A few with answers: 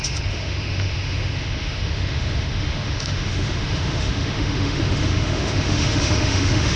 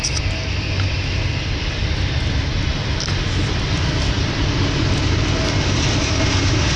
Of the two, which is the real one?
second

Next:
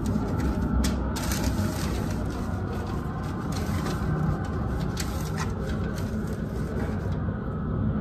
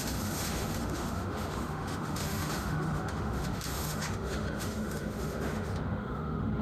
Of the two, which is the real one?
first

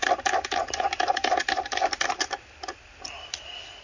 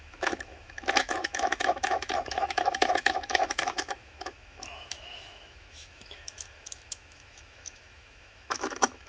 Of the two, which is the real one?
first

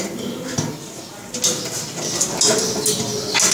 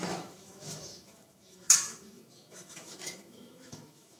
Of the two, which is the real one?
first